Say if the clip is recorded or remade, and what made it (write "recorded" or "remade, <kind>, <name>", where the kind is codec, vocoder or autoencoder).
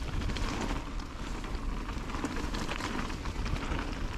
recorded